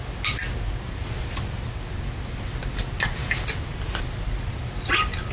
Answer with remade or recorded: recorded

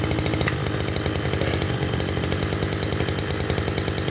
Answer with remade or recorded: recorded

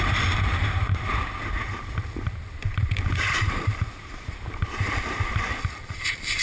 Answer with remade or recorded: remade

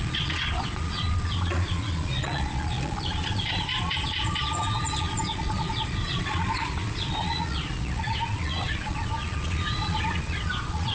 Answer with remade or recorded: remade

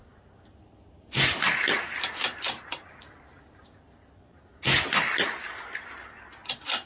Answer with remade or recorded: recorded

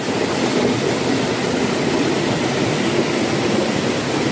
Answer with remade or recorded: recorded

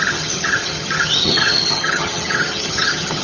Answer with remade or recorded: remade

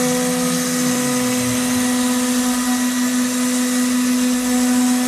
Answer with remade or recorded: recorded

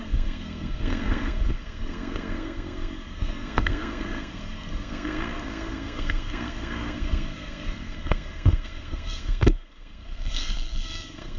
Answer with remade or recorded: remade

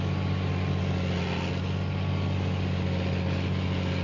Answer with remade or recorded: recorded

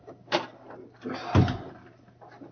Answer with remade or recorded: recorded